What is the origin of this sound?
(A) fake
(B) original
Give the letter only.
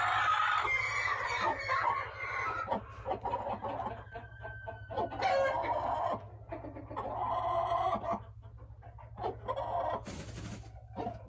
B